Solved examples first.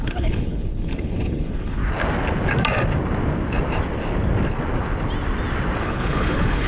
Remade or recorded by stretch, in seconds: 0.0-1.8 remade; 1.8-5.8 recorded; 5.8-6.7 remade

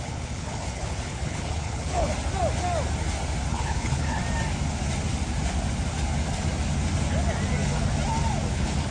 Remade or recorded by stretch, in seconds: 0.0-2.1 remade; 2.1-3.5 recorded; 3.5-4.2 remade; 4.2-8.5 recorded; 8.5-8.9 remade

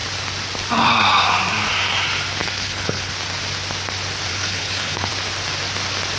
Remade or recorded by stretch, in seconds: 0.0-2.4 recorded; 2.4-3.1 remade; 3.1-4.3 recorded; 4.3-5.1 remade; 5.1-6.2 recorded